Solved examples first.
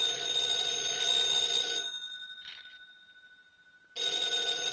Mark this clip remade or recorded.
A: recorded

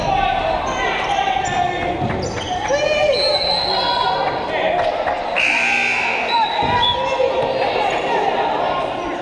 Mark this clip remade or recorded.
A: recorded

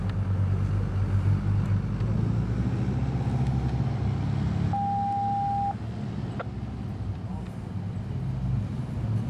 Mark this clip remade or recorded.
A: recorded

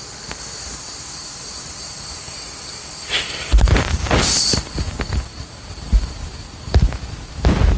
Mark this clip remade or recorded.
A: recorded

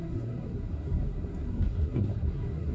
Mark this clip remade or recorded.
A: remade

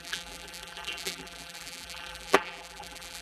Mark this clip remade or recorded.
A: remade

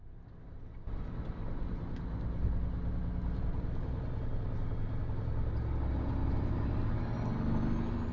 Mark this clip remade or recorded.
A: recorded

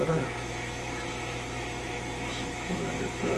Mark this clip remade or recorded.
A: remade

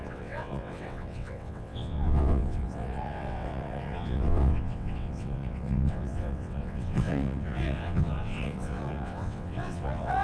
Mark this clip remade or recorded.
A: remade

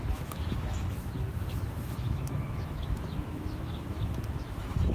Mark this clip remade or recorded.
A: remade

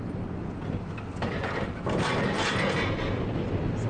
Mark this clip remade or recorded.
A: recorded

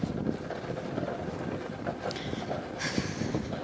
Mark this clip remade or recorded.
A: recorded